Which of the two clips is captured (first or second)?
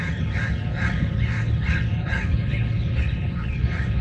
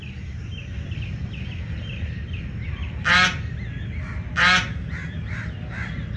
second